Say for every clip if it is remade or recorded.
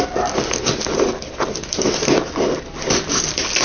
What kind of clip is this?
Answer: recorded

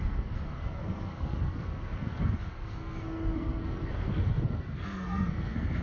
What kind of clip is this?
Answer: remade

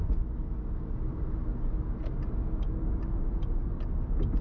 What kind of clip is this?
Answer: recorded